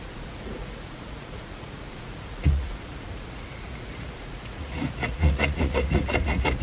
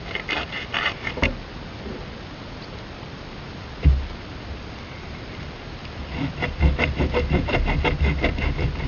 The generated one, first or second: first